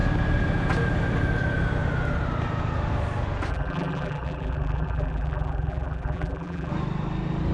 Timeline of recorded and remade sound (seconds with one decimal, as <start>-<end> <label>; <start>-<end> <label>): 0.0-3.5 recorded; 3.5-6.7 remade; 6.7-7.5 recorded